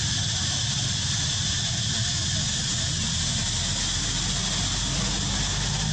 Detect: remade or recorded recorded